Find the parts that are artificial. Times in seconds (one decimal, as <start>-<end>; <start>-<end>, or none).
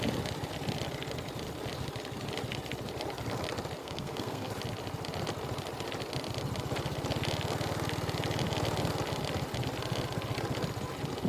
3.8-4.5